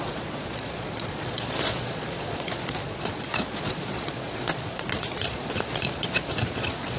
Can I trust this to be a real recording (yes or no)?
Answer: no